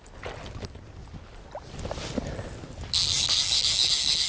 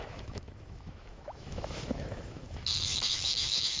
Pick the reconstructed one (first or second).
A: second